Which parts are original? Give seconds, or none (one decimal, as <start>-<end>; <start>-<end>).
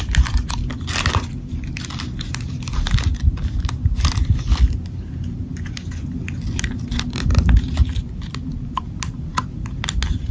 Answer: 0.0-10.3